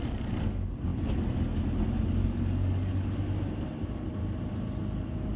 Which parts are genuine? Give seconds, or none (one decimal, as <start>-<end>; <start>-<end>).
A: 0.0-2.2; 3.2-5.4